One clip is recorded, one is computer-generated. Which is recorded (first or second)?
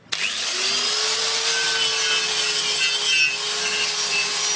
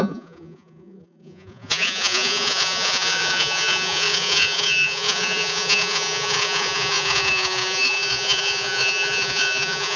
first